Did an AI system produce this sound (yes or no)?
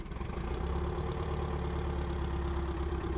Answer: yes